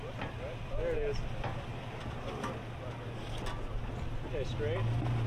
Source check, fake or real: real